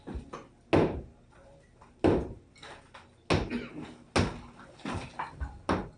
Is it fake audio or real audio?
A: real